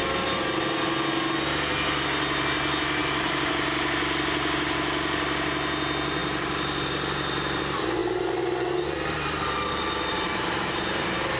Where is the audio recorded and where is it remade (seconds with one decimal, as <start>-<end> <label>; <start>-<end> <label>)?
0.0-3.0 recorded; 3.0-3.5 remade; 3.5-6.2 recorded; 6.2-7.6 remade; 7.6-8.0 recorded; 8.0-11.4 remade